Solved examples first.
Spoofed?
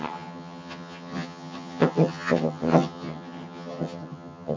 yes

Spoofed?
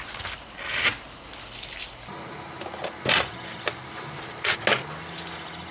no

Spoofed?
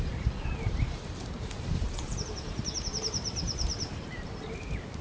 yes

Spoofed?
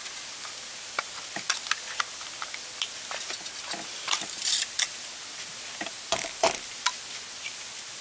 no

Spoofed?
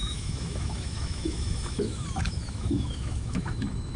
yes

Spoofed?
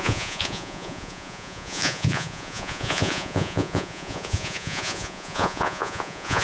yes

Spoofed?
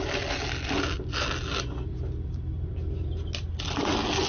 no